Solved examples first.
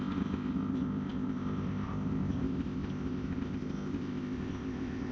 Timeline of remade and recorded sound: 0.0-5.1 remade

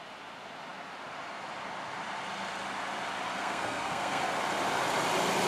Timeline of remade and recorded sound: 0.0-3.4 recorded; 3.4-4.2 remade; 4.2-5.5 recorded